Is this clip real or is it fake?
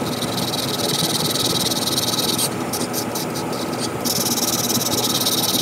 real